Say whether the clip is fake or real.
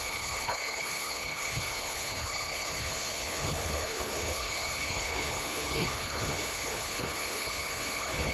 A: fake